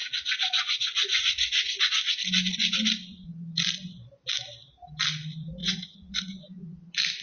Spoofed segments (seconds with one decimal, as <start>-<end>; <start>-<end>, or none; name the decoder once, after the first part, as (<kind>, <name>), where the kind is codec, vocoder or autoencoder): 0.0-1.8 (vocoder, Vocos); 5.6-6.8